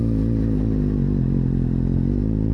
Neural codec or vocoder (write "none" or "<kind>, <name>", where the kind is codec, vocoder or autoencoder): none